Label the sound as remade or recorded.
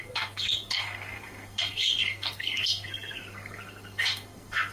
remade